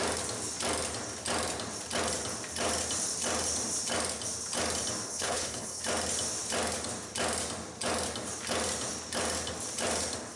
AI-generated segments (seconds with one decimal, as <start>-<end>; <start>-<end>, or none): 5.1-5.8